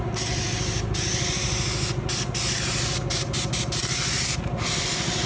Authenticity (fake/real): real